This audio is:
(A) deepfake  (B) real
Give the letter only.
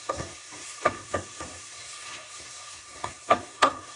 A